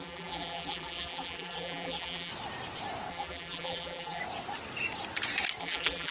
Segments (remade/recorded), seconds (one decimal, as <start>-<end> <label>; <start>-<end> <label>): 0.0-2.3 remade; 2.3-3.1 recorded; 3.1-4.2 remade; 4.2-5.6 recorded; 5.6-6.1 remade